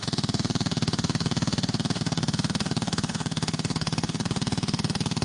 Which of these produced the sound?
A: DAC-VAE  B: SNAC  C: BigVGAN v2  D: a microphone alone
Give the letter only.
A